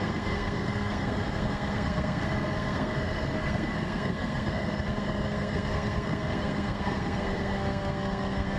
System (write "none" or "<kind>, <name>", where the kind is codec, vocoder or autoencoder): codec, SNAC